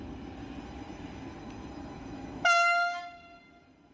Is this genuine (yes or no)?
yes